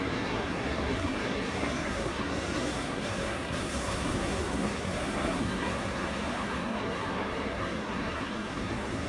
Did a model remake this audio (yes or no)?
yes